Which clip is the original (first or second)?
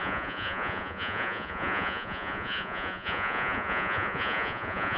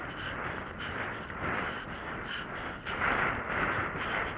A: second